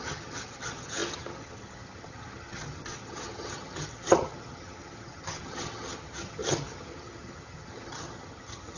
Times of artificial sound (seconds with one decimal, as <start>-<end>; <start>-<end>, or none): 0.0-8.8